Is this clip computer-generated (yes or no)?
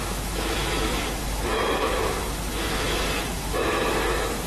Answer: yes